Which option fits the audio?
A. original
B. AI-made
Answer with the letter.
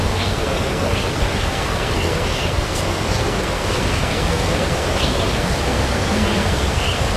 B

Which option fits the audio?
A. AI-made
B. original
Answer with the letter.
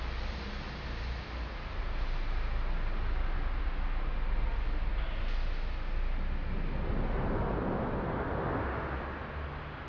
B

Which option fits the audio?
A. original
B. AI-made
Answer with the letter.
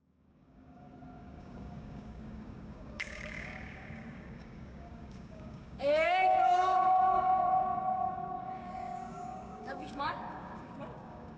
B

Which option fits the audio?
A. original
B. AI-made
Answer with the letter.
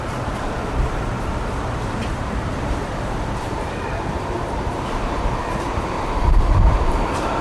B